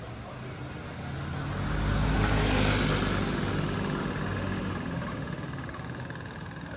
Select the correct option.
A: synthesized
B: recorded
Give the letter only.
B